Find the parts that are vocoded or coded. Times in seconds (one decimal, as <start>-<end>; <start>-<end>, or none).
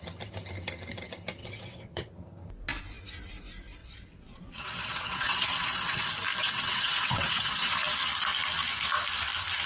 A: 1.4-2.1; 3.8-6.0; 6.4-7.7